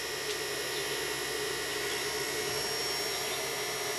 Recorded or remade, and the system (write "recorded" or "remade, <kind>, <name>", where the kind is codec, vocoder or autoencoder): recorded